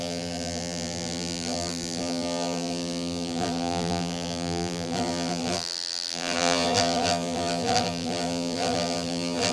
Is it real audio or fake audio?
fake